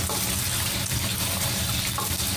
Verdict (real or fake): real